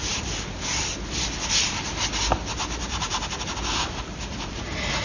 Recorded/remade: recorded